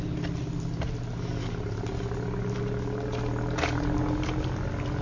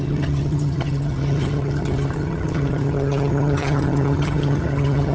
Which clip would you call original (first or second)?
first